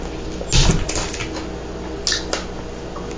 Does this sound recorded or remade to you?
recorded